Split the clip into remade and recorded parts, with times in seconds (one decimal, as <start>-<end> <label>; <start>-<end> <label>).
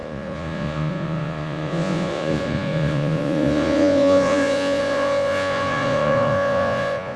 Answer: 0.0-7.2 remade